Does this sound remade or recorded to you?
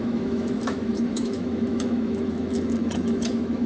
remade